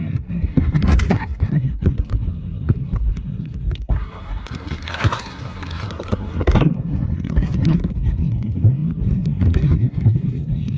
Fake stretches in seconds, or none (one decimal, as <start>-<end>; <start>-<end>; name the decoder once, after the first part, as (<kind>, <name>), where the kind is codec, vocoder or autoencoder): 0.0-10.8 (codec, SNAC)

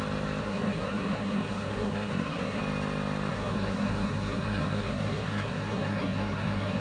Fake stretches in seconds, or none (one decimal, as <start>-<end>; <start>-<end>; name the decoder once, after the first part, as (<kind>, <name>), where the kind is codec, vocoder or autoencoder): 0.4-2.6 (codec, SNAC); 3.3-6.8

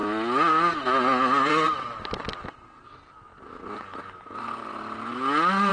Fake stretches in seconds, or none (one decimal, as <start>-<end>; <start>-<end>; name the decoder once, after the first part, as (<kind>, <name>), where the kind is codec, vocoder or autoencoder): none

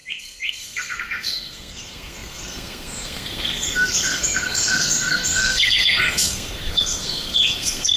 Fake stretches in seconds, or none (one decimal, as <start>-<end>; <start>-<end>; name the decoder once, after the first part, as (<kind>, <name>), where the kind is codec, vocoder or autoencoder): 0.0-8.0 (codec, SNAC)

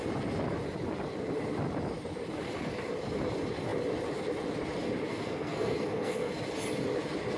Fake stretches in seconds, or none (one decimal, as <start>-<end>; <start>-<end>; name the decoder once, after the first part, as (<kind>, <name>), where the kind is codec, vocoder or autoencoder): 5.1-6.3 (codec, SNAC)

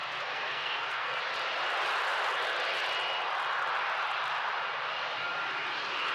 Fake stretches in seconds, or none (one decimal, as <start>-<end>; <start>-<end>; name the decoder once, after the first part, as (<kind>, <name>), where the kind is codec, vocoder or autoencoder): 0.0-1.2 (codec, SNAC)

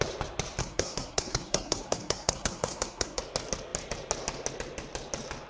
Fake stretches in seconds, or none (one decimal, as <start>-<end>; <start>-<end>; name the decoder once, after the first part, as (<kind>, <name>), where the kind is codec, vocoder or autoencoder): 0.6-3.2 (codec, SNAC)